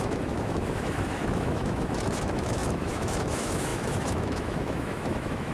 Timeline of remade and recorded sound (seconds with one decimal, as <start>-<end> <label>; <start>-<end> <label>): 0.0-5.5 remade